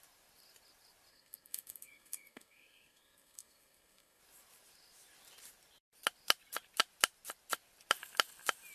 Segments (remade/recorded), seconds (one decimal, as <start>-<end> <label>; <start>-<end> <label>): 0.0-1.1 recorded; 1.1-4.2 remade; 4.2-8.7 recorded